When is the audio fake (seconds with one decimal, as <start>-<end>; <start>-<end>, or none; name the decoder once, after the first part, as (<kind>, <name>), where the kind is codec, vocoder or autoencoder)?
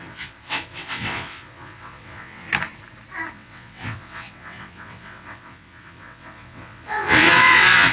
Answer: 0.0-2.5 (vocoder, WaveNeXt); 3.3-7.9